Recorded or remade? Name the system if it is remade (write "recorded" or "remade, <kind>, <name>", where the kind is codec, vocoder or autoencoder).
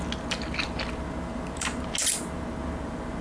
recorded